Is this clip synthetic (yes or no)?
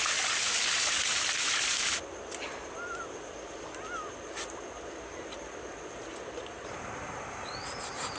no